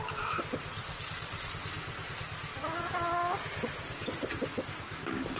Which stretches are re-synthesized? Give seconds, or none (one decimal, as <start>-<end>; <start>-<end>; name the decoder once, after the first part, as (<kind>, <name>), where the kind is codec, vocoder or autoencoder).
0.8-1.5 (codec, DAC)